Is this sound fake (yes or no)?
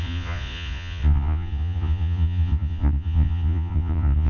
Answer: yes